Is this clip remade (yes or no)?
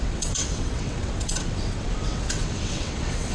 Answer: yes